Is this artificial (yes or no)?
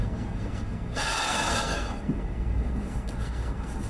yes